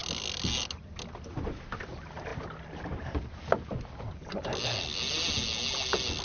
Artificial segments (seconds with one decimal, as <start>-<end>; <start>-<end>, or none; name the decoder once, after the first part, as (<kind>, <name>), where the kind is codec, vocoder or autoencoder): none